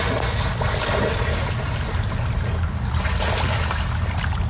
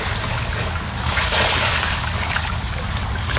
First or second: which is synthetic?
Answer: second